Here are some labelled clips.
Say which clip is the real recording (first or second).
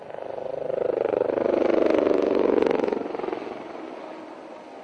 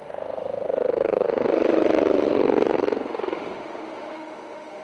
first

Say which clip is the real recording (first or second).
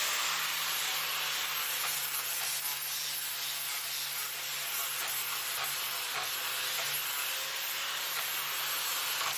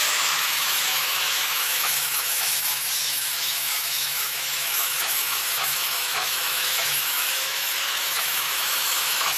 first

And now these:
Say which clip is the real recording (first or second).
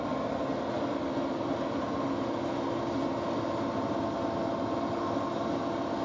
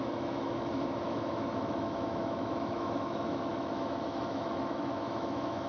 first